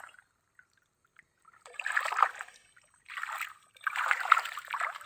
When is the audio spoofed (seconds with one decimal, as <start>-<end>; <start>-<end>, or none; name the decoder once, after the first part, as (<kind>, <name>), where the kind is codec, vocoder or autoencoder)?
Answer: 0.0-1.1 (vocoder, BigVGAN v2); 3.5-5.1